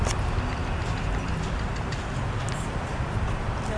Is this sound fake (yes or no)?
no